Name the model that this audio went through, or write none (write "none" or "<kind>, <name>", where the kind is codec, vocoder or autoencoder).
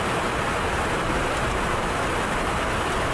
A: none